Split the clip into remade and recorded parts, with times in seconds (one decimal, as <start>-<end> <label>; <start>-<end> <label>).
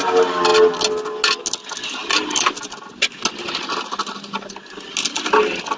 0.0-5.8 recorded